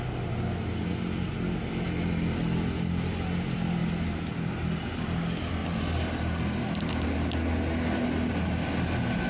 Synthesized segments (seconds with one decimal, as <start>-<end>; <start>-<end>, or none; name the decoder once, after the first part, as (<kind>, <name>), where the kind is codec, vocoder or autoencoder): none